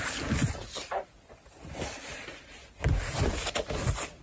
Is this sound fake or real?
real